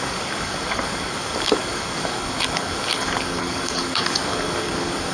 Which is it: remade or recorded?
remade